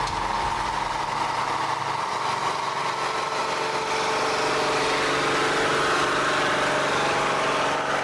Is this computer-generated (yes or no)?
no